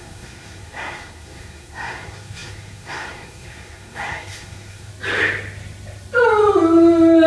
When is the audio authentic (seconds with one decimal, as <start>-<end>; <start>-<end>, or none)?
4.9-7.3